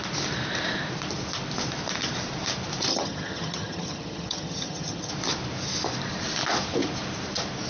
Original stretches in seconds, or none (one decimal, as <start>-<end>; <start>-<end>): 0.0-2.9; 5.1-7.7